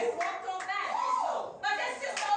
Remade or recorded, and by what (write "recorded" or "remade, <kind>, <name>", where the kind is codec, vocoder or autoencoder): recorded